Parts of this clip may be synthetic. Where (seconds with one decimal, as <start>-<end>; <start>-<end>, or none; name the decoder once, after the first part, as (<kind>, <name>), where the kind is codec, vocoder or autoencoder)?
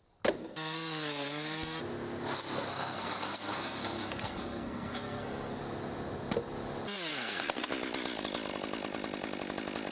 0.4-1.8 (codec, SNAC); 2.7-5.6; 7.1-7.7